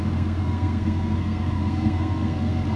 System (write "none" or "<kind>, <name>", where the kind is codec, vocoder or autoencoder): codec, SNAC